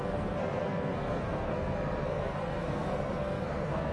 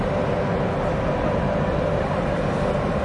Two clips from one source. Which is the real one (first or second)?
second